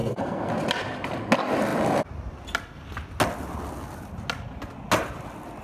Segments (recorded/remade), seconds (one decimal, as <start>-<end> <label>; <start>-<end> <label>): 0.0-0.5 remade; 0.5-5.6 recorded